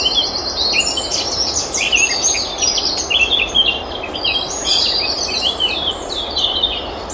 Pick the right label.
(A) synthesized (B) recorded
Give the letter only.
B